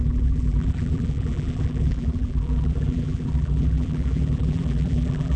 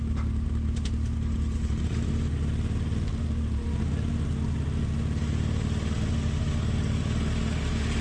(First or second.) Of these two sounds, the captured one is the second